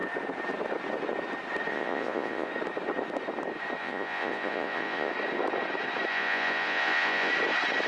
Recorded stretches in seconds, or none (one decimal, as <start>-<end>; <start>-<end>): 0.0-1.7; 2.5-3.8; 5.1-6.1; 7.3-7.9